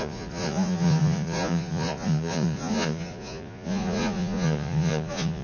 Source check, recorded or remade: remade